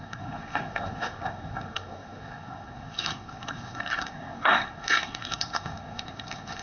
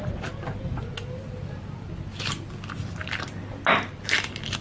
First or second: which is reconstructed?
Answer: first